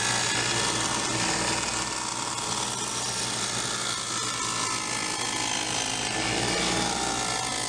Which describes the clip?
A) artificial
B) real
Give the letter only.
B